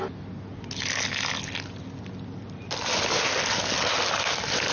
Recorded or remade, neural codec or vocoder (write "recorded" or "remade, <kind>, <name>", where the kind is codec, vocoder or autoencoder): recorded